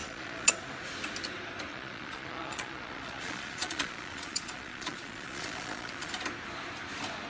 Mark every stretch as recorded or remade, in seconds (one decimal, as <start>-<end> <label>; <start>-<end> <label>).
0.0-0.5 remade; 0.5-1.7 recorded; 1.7-6.1 remade; 6.1-7.3 recorded